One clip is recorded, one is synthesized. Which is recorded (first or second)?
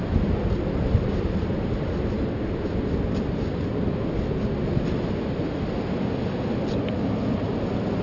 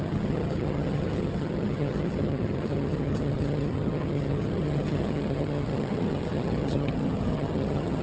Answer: first